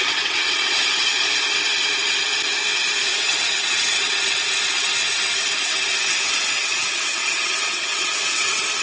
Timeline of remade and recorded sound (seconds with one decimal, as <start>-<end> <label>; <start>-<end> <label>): 0.0-1.1 remade; 1.1-3.1 recorded; 3.1-4.2 remade; 4.2-6.0 recorded; 6.0-8.8 remade